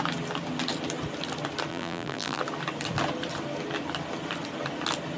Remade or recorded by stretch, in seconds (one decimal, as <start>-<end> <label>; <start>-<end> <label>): 0.0-1.7 recorded; 1.7-2.4 remade; 2.4-5.2 recorded